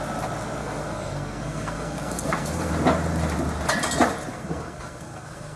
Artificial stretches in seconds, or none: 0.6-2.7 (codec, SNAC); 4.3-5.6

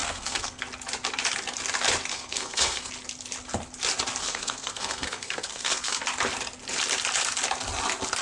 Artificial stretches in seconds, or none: 0.0-0.6 (codec, SNAC); 2.1-2.9; 4.2-6.0

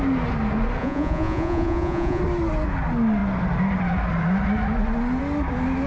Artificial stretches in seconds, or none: 0.8-2.2 (vocoder, Vocos)